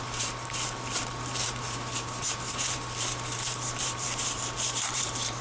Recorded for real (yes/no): no